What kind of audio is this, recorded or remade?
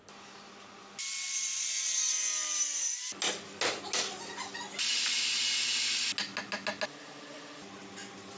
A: recorded